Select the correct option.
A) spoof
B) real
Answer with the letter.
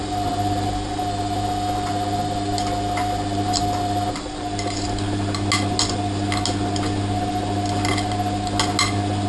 B